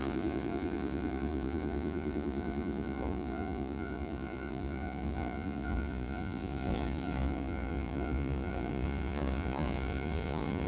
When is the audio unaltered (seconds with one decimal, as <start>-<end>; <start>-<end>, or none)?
none